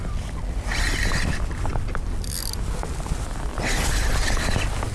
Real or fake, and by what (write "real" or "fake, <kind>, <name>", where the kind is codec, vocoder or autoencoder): real